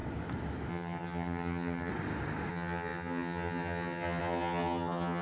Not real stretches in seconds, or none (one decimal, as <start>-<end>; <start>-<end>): 0.7-1.9; 2.5-5.2